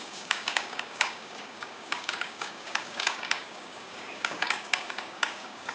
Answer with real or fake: fake